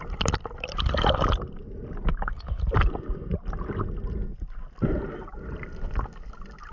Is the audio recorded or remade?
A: recorded